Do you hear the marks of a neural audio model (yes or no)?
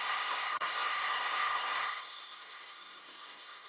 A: yes